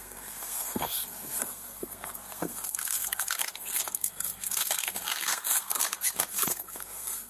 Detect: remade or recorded remade